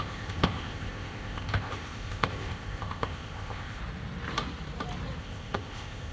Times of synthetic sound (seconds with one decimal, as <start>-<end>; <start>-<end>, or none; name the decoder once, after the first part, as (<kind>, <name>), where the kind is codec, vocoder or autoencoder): 0.0-3.8 (codec, ZipCodec); 5.2-6.1